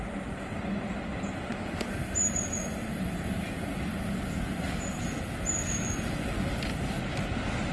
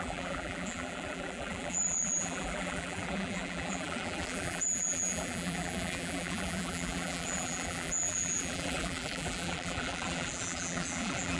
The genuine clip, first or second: first